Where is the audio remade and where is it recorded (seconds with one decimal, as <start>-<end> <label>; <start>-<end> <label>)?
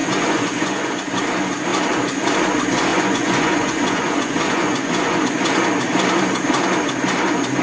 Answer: 0.0-0.9 remade; 0.9-2.9 recorded; 2.9-5.2 remade; 5.2-7.6 recorded